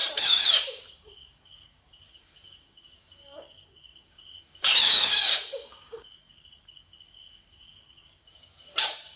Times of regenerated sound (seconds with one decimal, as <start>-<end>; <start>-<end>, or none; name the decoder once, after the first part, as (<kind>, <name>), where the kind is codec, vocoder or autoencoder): 0.0-9.2 (codec, DAC)